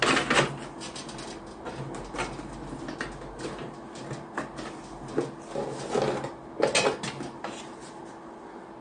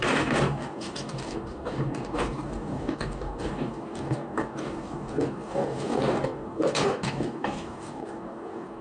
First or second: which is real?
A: first